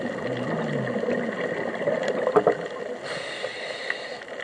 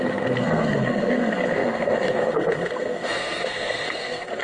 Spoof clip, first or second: second